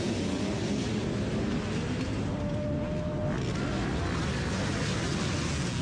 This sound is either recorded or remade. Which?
recorded